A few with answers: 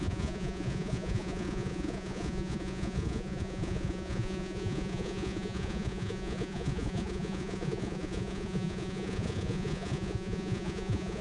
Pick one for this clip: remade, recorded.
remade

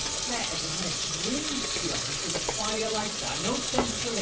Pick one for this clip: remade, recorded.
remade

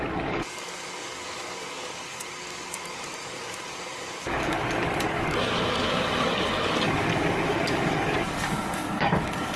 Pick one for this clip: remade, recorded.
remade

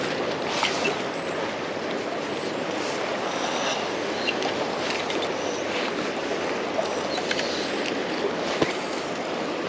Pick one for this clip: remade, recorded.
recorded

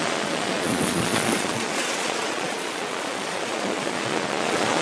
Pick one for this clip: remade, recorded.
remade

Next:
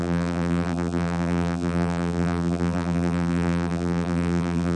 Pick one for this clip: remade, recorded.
remade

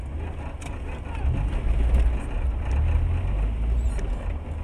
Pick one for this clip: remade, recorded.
recorded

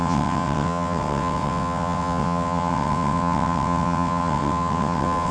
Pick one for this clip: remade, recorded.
remade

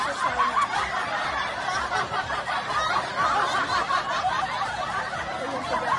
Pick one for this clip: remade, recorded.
recorded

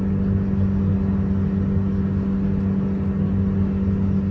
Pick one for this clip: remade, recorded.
recorded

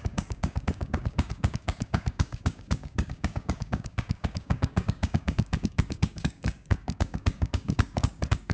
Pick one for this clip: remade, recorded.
remade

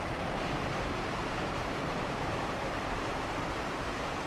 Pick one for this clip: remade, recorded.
remade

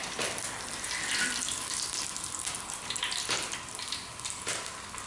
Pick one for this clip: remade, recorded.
recorded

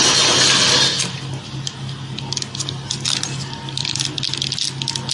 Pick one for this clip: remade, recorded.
recorded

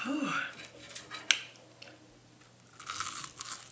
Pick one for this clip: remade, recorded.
recorded